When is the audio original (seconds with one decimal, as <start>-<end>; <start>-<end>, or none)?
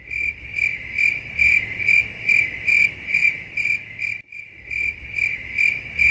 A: 0.0-6.1